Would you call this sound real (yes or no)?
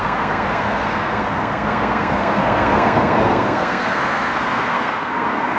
no